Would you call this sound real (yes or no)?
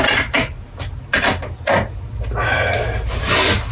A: yes